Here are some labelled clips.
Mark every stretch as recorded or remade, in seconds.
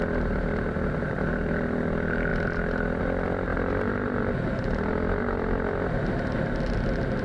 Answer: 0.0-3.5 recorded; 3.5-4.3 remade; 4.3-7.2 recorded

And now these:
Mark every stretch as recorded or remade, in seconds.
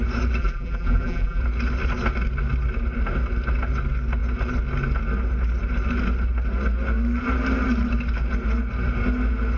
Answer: 0.0-0.4 recorded; 0.4-1.4 remade; 1.4-9.6 recorded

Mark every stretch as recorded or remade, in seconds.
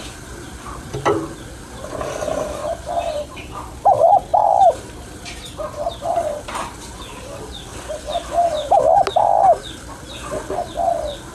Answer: 0.0-2.6 recorded; 2.6-3.5 remade; 3.5-4.3 recorded; 4.3-7.0 remade; 7.0-11.3 recorded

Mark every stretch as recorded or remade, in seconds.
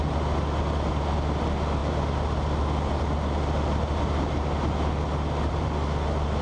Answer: 0.0-6.4 recorded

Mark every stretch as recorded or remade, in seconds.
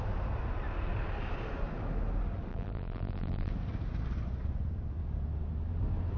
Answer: 0.0-2.5 recorded; 2.5-3.5 remade; 3.5-6.2 recorded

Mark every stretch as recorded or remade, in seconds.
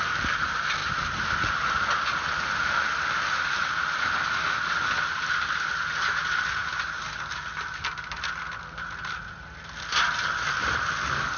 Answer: 0.0-11.4 recorded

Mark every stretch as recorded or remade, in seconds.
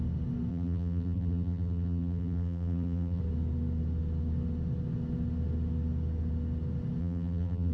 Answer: 0.0-0.5 recorded; 0.5-3.2 remade; 3.2-7.0 recorded; 7.0-7.7 remade